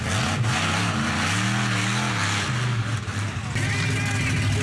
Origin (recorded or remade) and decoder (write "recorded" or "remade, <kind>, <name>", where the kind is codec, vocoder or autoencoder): recorded